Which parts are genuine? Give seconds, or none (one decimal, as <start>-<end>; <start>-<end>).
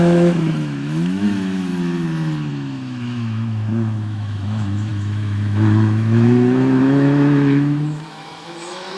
1.7-2.5